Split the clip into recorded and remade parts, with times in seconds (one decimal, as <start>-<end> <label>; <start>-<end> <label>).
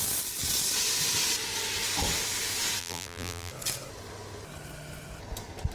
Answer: 0.0-2.8 recorded; 2.8-3.5 remade; 3.5-5.7 recorded